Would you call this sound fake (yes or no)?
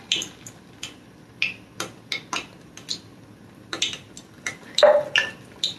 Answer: no